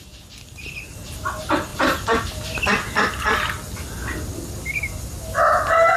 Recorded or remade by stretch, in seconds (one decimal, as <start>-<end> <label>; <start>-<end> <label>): 0.0-6.0 recorded